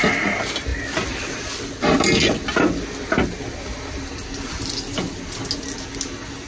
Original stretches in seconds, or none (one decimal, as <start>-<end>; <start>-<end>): 0.0-6.5